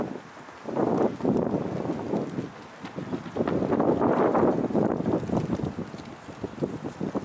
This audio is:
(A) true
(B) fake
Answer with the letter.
A